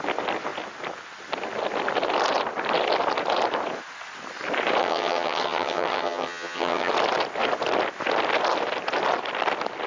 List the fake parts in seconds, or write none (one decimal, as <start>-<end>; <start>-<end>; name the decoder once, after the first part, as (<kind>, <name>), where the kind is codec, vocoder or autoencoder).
4.8-6.9 (vocoder, HiFi-GAN)